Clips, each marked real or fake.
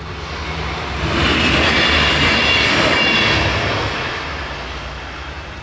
real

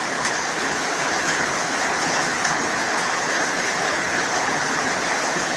fake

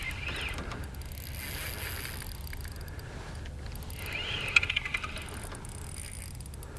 real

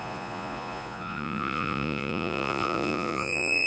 fake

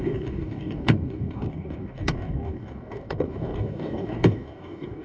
fake